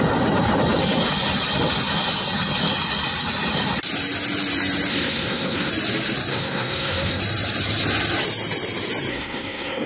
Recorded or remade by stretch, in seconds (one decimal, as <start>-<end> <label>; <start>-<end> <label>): 0.0-4.9 recorded; 4.9-5.7 remade; 5.7-6.3 recorded; 6.3-7.2 remade; 7.2-9.1 recorded; 9.1-9.9 remade

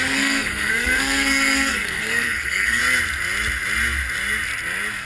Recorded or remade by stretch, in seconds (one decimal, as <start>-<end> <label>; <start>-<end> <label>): 0.0-2.8 remade; 2.8-5.0 recorded

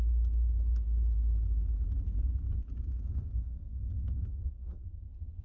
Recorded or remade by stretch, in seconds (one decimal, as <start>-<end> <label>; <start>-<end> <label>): 0.0-2.8 recorded; 2.8-4.8 remade; 4.8-5.4 recorded

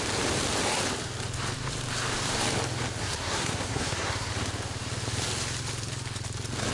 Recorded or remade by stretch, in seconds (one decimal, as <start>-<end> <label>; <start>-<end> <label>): 0.0-3.0 recorded; 3.0-4.3 remade; 4.3-6.7 recorded

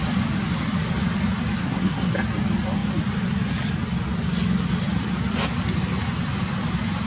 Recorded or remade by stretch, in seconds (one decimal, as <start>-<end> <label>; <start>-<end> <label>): 0.0-1.6 recorded; 1.6-2.1 remade; 2.1-7.1 recorded

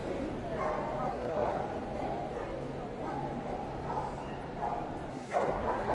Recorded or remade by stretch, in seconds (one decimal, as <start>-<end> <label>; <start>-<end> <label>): 0.0-1.1 recorded; 1.1-1.6 remade; 1.6-5.1 recorded; 5.1-5.9 remade